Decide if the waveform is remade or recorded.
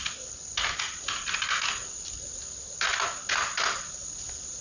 recorded